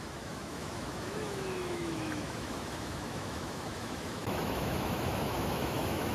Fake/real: fake